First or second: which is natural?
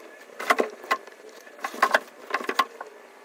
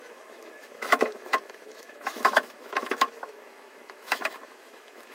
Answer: first